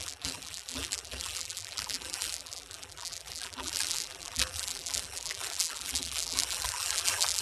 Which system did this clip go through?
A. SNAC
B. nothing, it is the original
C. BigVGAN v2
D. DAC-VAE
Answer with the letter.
C